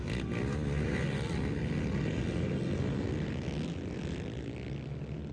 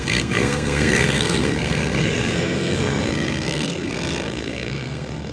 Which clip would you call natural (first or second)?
first